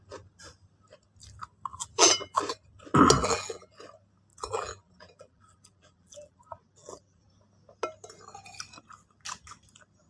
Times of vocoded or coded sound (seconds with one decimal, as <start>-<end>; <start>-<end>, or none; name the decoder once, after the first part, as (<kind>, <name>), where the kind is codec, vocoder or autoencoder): 1.7-2.4 (vocoder, BigVGAN v2); 3.2-3.7; 4.3-7.3